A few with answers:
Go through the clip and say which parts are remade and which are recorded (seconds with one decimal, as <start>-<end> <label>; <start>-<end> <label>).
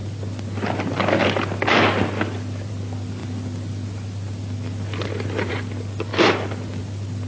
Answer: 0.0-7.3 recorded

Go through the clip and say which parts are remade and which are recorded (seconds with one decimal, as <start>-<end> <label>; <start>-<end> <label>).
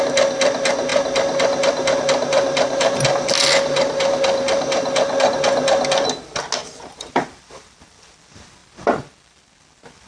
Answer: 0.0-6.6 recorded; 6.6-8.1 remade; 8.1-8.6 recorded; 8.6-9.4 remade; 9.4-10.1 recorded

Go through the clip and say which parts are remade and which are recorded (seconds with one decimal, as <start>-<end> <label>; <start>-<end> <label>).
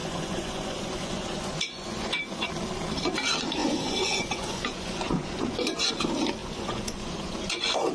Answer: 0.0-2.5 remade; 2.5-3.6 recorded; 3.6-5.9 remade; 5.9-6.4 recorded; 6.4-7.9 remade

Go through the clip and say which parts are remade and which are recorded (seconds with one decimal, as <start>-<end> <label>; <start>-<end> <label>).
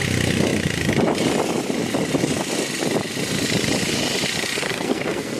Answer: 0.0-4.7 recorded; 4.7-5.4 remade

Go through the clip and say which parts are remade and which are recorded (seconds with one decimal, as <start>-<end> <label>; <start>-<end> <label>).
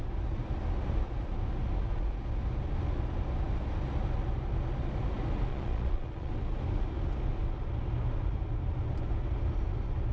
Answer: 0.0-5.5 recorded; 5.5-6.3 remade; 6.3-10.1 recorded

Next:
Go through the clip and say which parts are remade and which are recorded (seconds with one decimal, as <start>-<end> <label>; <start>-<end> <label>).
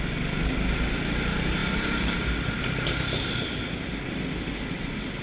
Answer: 0.0-5.2 recorded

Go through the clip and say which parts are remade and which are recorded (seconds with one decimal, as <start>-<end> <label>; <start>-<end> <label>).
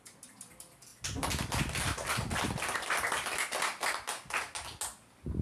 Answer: 0.0-5.4 recorded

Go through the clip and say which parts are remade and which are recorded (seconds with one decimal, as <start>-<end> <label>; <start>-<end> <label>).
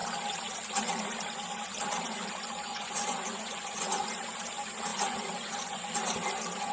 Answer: 0.0-2.7 recorded; 2.7-4.1 remade; 4.1-4.9 recorded; 4.9-5.9 remade; 5.9-6.7 recorded